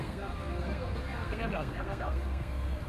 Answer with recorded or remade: remade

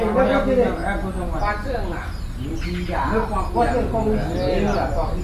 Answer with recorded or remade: recorded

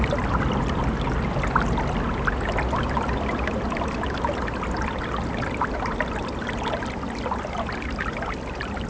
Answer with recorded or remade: recorded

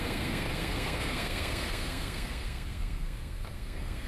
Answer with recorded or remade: remade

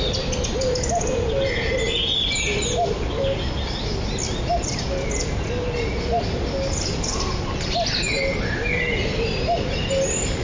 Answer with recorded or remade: recorded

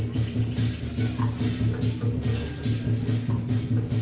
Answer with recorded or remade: recorded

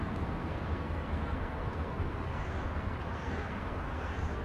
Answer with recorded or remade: remade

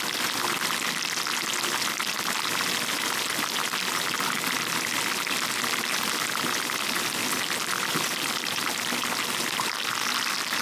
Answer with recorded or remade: recorded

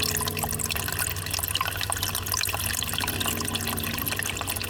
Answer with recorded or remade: recorded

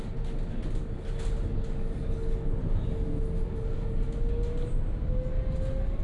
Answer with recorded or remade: recorded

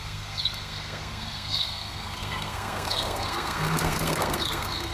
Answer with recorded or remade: remade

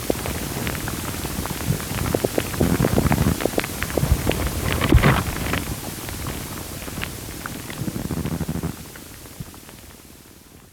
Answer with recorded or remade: recorded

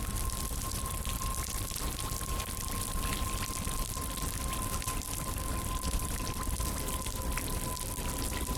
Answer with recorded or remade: recorded